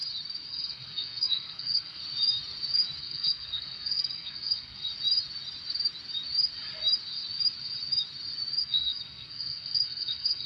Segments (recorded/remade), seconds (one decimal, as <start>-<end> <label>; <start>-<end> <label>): 0.0-0.5 recorded; 0.5-2.0 remade; 2.0-3.0 recorded; 3.0-4.9 remade; 4.9-8.6 recorded; 8.6-10.5 remade